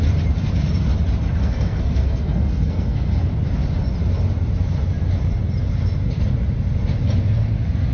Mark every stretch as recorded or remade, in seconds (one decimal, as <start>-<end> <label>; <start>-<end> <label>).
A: 0.0-1.4 recorded; 1.4-3.3 remade; 3.3-7.9 recorded